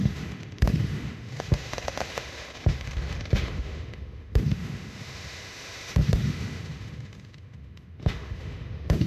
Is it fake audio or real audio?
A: fake